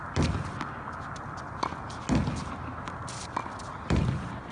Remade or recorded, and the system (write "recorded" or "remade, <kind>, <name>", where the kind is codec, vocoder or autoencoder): recorded